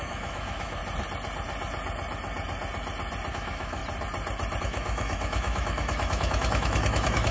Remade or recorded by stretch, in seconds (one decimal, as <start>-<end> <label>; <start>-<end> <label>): 0.0-0.8 remade; 0.8-3.3 recorded; 3.3-3.8 remade; 3.8-4.6 recorded; 4.6-7.3 remade